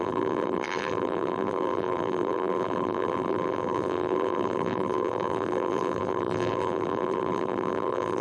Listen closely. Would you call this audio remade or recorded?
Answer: remade